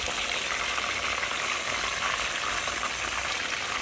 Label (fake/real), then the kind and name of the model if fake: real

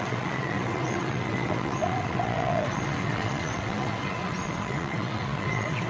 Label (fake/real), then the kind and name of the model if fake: fake, vocoder, WaveNeXt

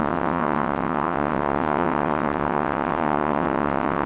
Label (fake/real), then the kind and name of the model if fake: fake, vocoder, WaveNeXt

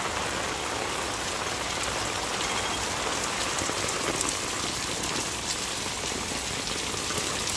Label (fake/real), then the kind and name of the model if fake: real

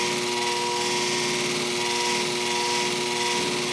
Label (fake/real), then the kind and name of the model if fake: real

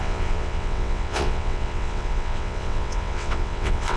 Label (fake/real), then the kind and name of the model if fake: fake, vocoder, WaveNeXt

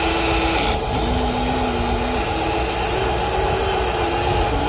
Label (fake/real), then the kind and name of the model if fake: real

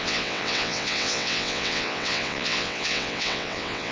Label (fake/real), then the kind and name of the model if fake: fake, vocoder, WaveNeXt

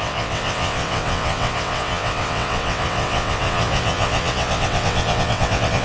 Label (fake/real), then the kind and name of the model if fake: fake, vocoder, WaveNeXt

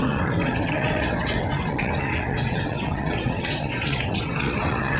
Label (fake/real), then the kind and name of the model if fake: fake, vocoder, WaveNeXt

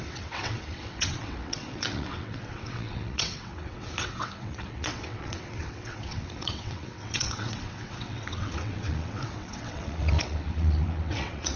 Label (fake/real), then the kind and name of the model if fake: fake, vocoder, WaveNeXt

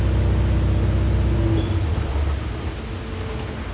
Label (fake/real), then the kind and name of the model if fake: real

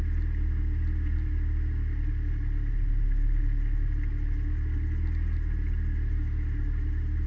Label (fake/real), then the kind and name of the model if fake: real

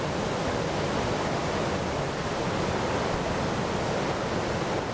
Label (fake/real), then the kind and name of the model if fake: real